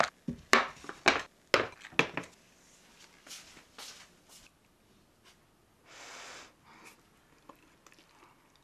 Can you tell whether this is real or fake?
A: real